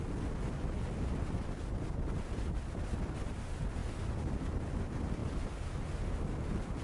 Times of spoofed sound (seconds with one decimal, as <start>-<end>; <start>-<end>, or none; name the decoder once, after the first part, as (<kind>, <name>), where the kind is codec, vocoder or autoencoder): none